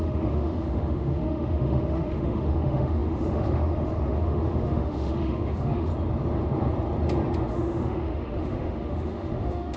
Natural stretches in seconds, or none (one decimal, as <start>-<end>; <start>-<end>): 5.9-7.5